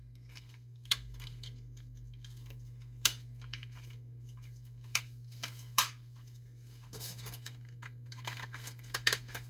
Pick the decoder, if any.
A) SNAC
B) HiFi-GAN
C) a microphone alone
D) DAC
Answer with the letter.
A